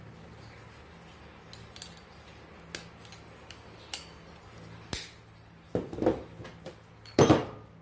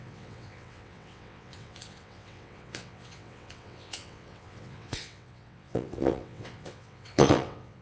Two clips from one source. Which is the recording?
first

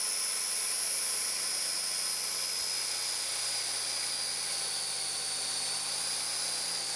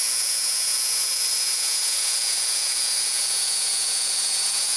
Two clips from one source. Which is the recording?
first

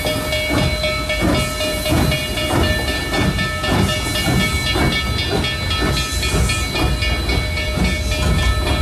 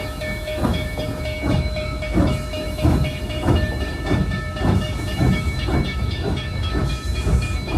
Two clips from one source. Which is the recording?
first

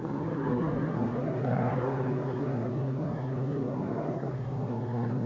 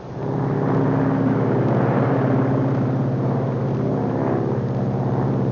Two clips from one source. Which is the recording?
second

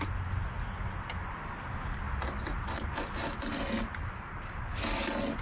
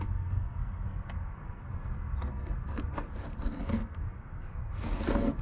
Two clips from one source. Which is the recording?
first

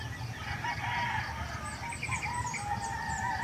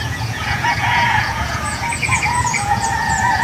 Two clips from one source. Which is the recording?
first